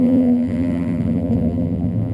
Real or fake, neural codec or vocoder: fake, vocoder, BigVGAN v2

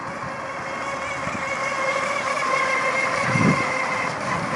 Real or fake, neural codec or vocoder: real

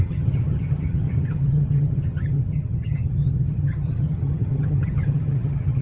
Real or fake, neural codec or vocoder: fake, vocoder, HiFi-GAN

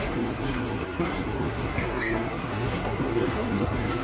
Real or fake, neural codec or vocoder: fake, codec, SNAC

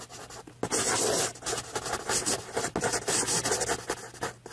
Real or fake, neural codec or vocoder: real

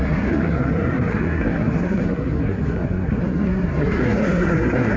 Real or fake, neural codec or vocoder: fake, codec, SNAC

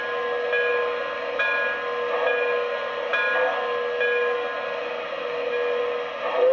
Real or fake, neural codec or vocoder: real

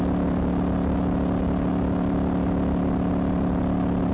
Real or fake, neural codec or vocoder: real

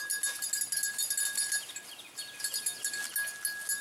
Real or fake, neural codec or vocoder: real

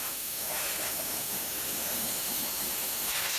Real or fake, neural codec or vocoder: fake, autoencoder, DAC-VAE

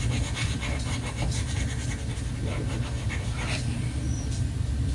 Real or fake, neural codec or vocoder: real